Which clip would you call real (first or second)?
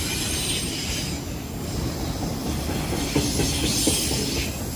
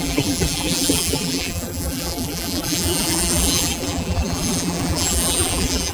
first